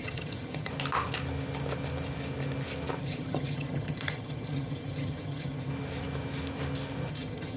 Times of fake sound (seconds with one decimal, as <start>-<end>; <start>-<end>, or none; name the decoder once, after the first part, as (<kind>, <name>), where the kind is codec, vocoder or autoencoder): 0.0-0.7 (vocoder, HiFi-GAN); 3.0-5.7; 7.1-7.6